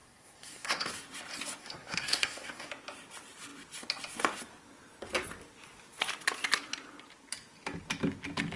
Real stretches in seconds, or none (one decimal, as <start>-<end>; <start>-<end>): 0.9-1.6; 2.7-8.6